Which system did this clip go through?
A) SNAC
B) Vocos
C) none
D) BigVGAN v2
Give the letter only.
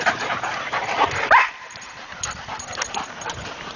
D